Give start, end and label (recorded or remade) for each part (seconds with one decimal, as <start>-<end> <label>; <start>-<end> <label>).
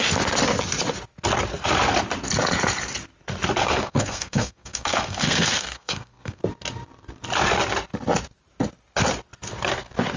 0.0-3.6 recorded; 3.6-6.4 remade; 6.4-10.2 recorded